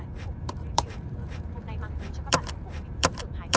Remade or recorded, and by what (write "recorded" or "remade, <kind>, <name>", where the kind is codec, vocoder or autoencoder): remade, vocoder, BigVGAN v2